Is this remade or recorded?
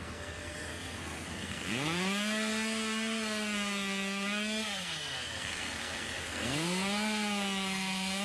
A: remade